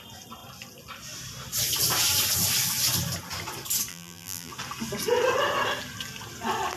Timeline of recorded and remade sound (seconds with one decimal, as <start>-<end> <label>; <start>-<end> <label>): 0.0-3.9 recorded; 3.9-4.5 remade; 4.5-6.8 recorded